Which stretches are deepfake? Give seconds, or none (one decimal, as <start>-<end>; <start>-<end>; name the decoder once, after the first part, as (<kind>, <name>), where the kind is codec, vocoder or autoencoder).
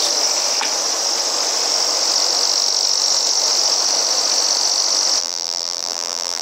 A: 5.2-6.4 (vocoder, BigVGAN v2)